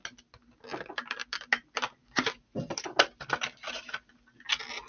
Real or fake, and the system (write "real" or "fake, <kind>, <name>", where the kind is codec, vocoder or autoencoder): real